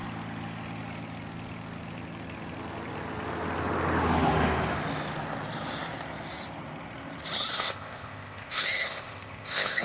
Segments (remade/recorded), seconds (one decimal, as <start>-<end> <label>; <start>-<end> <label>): 0.0-7.5 recorded; 7.5-9.8 remade

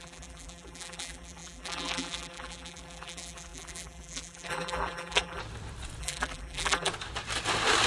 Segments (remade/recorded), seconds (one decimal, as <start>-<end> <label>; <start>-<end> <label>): 0.0-5.4 remade; 5.4-6.0 recorded; 6.0-6.9 remade; 6.9-7.9 recorded